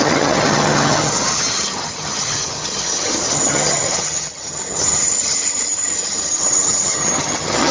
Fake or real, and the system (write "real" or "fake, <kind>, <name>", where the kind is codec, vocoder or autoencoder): fake, vocoder, HiFi-GAN